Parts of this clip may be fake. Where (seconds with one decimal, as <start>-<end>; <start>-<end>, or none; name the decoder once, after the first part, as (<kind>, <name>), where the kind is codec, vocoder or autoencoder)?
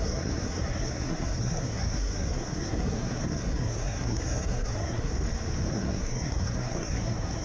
0.0-5.1 (codec, SNAC); 5.7-7.4